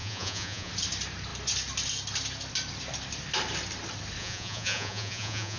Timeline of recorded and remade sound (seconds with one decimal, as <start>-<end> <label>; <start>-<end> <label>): 0.0-0.7 remade; 0.7-4.2 recorded; 4.2-5.6 remade

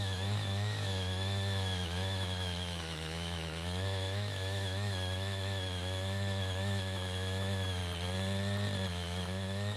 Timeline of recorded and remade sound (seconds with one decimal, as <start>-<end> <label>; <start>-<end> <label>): 0.0-7.8 remade; 7.8-8.9 recorded; 8.9-9.8 remade

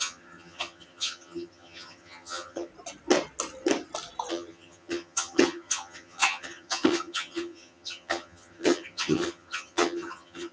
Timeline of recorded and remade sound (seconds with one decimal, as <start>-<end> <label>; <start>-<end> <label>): 0.0-2.7 remade; 2.7-4.3 recorded; 4.3-10.5 remade

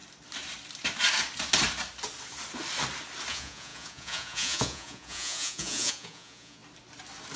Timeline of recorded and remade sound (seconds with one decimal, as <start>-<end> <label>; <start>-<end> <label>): 0.0-3.3 recorded; 3.3-6.6 remade; 6.6-7.4 recorded

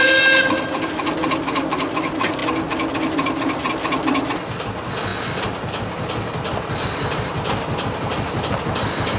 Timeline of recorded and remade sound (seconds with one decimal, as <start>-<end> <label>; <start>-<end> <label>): 0.0-9.2 recorded

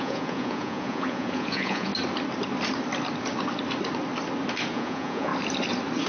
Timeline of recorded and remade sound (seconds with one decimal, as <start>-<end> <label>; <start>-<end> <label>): 0.0-1.9 remade; 1.9-4.7 recorded; 4.7-5.3 remade; 5.3-6.1 recorded